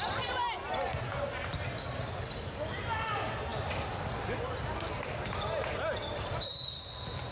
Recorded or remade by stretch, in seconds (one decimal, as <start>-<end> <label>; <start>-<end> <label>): 0.0-7.3 recorded